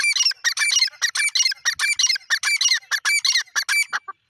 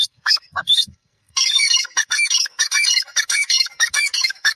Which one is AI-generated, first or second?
second